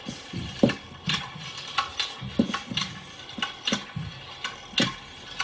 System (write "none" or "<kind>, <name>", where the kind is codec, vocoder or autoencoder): none